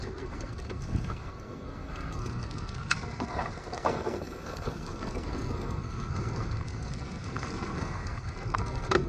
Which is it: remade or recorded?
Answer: remade